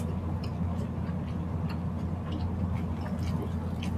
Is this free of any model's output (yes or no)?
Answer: yes